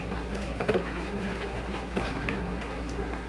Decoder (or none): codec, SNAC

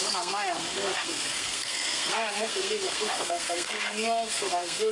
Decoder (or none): codec, SNAC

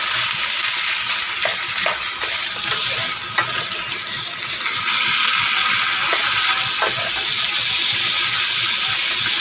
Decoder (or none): none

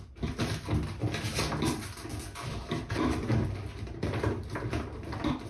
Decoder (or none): none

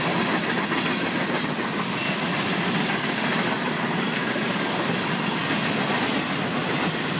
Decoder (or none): none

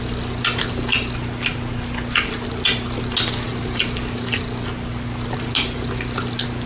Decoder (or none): none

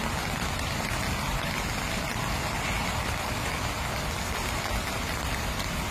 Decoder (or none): none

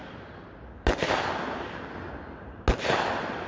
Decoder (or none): none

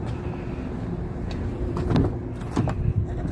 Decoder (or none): none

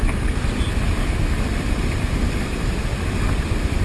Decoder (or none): none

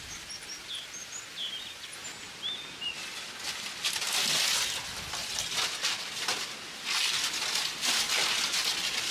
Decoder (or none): none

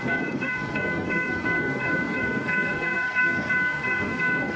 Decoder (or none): codec, SNAC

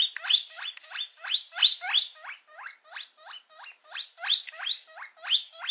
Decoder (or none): none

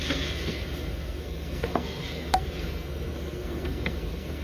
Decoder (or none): codec, SNAC